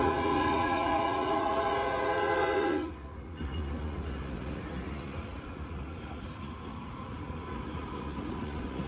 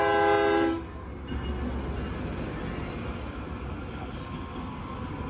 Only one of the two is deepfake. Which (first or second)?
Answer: first